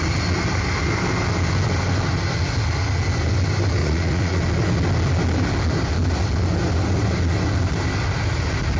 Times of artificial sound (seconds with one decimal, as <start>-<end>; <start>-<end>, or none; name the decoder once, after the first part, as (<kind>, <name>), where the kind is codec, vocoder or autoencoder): 3.8-4.4 (vocoder, Vocos)